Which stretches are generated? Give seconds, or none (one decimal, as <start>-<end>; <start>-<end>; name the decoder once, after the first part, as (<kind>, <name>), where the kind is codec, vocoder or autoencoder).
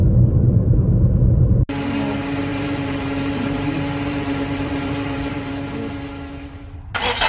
2.5-5.5 (vocoder, BigVGAN v2)